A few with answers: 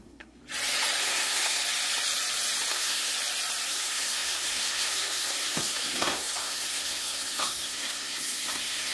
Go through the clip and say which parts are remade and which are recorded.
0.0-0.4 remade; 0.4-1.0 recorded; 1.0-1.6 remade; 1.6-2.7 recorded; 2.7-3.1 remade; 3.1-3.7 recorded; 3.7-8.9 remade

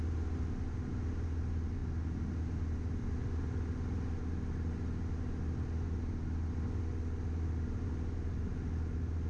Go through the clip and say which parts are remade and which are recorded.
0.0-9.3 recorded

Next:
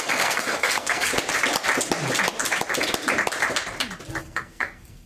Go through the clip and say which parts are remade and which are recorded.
0.0-1.1 remade; 1.1-4.2 recorded; 4.2-5.1 remade